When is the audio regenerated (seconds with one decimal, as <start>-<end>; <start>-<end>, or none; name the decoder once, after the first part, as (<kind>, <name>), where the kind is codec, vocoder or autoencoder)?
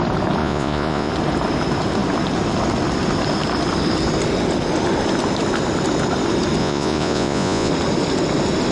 0.4-1.1 (vocoder, Vocos); 6.6-7.7